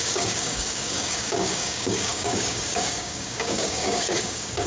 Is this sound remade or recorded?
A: remade